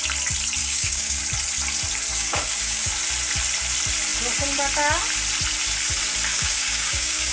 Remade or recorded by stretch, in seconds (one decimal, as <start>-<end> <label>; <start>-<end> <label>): 0.0-0.6 recorded; 0.6-1.2 remade; 1.2-2.1 recorded; 2.1-2.9 remade; 2.9-6.3 recorded; 6.3-7.3 remade